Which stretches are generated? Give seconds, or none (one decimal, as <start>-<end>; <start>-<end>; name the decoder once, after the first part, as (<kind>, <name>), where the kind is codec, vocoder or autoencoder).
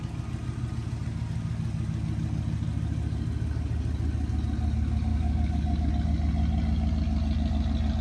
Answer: 5.1-5.9 (codec, DAC)